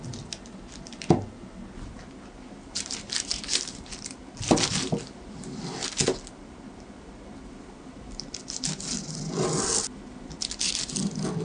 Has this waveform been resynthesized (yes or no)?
no